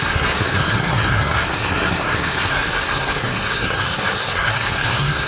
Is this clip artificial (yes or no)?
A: yes